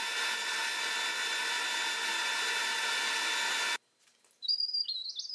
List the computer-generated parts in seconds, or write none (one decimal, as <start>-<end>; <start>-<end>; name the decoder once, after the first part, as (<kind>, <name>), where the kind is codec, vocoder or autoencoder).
none